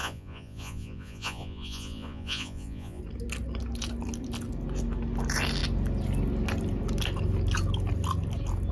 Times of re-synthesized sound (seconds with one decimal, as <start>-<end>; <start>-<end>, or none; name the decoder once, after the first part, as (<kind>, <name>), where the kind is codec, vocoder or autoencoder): 0.0-3.0 (vocoder, Vocos)